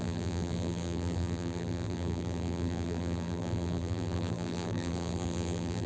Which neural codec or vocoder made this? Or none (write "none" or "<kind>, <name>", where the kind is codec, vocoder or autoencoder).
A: vocoder, BigVGAN v2